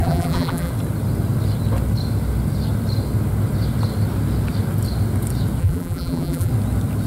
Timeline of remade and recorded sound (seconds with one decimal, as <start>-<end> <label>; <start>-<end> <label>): 0.0-0.7 remade; 0.7-5.6 recorded; 5.6-6.5 remade; 6.5-7.1 recorded